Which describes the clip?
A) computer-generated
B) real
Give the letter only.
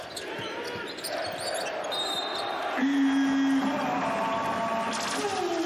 B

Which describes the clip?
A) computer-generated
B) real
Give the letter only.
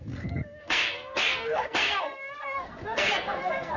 A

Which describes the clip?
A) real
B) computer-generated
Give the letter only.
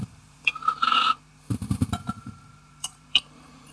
B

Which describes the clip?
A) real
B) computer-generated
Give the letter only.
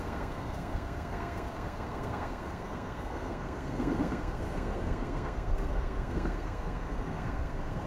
B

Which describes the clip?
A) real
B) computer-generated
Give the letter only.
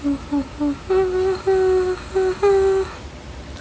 A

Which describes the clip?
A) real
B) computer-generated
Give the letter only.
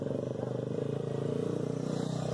A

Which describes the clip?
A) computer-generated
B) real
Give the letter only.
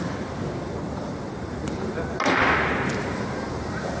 B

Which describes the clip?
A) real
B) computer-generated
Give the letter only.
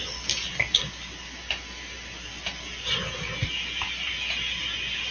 A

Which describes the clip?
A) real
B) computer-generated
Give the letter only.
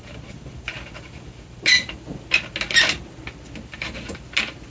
A